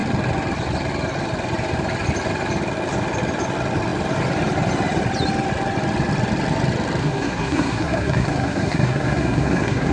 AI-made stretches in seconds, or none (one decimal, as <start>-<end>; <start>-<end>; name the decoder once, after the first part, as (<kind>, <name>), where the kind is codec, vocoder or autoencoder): 7.0-9.9 (codec, SNAC)